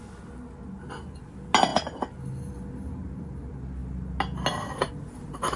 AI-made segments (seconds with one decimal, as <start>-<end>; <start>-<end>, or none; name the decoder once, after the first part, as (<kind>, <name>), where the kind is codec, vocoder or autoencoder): none